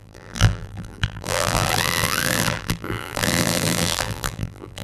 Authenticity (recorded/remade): remade